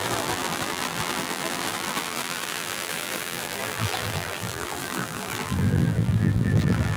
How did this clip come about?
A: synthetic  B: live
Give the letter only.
A